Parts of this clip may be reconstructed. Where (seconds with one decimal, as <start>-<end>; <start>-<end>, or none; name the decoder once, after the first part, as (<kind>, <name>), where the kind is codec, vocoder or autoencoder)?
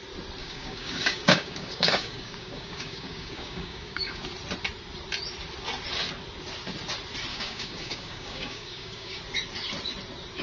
0.4-4.2 (codec, DAC); 7.3-9.2